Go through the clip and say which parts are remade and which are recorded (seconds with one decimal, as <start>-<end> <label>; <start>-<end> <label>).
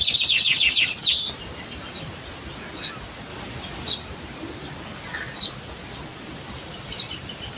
0.0-3.3 recorded; 3.3-3.9 remade; 3.9-6.1 recorded; 6.1-7.6 remade